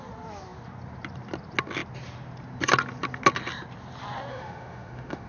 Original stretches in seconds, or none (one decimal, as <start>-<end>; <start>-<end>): 0.0-4.3